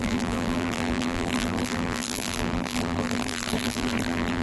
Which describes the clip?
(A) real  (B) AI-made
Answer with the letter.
B